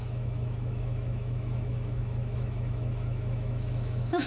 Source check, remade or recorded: remade